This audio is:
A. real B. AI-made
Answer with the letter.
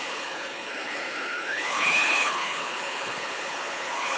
B